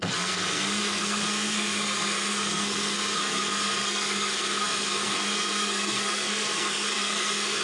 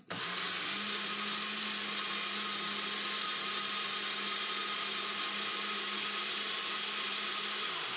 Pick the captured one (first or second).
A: second